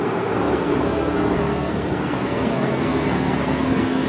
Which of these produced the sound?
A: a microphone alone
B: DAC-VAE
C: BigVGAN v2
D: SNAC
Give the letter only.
D